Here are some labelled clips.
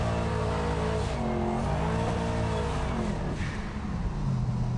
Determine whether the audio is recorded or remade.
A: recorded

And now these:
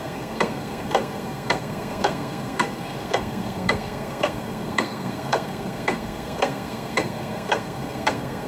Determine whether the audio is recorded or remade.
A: remade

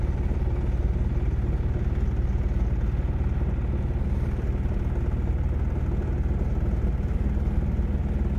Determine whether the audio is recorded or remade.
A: recorded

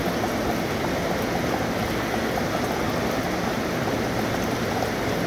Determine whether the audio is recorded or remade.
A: recorded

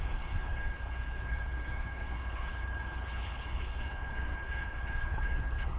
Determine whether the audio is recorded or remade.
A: remade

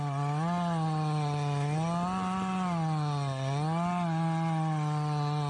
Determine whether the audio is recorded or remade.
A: recorded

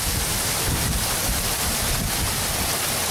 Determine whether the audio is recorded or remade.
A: recorded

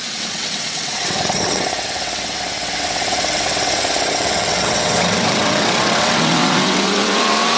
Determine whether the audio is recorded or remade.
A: remade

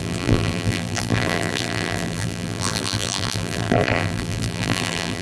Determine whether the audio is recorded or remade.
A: remade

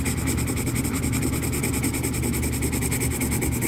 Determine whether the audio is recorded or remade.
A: recorded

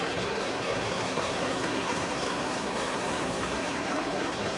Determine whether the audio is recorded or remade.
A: remade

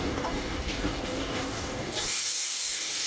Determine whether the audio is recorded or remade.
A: remade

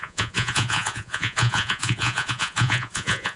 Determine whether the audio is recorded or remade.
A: remade